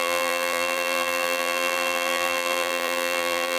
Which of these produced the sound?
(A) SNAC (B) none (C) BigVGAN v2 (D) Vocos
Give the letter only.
C